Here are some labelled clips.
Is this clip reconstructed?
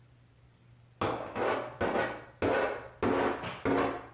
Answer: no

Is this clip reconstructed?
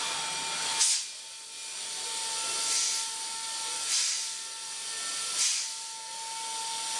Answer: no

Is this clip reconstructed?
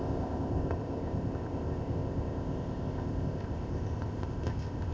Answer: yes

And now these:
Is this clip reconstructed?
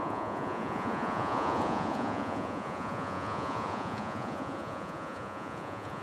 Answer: yes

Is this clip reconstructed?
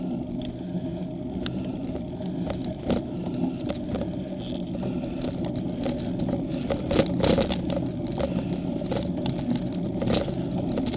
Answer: no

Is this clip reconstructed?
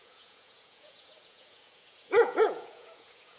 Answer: yes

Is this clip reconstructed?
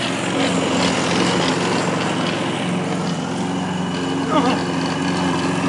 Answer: no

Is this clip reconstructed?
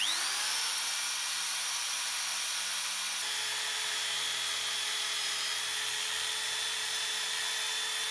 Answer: no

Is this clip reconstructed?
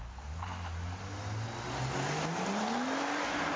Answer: no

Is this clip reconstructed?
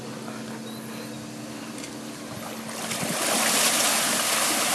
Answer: no